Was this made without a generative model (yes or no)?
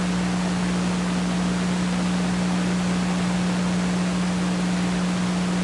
yes